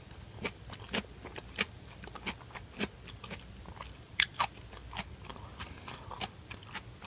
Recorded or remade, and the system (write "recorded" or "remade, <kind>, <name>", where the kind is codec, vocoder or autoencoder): recorded